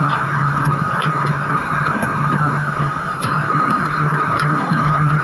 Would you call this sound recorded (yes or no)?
no